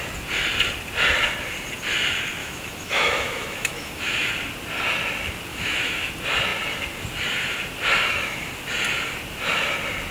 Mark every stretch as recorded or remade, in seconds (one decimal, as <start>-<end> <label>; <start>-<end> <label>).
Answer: 0.0-2.4 recorded; 2.4-4.3 remade; 4.3-5.5 recorded; 5.5-6.1 remade; 6.1-10.1 recorded